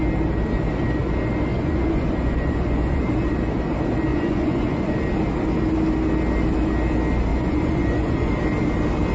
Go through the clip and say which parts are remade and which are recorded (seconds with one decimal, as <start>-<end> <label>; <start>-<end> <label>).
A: 0.0-1.5 recorded; 1.5-3.0 remade; 3.0-4.1 recorded; 4.1-4.9 remade; 4.9-7.3 recorded; 7.3-8.3 remade; 8.3-9.1 recorded